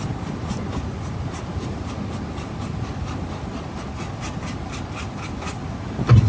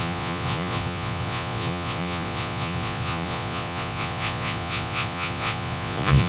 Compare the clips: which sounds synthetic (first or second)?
second